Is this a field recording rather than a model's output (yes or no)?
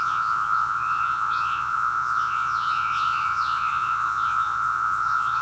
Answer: no